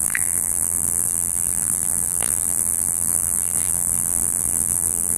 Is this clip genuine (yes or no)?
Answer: no